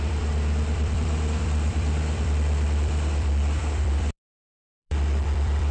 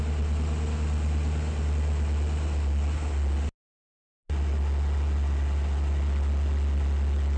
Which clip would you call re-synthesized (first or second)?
first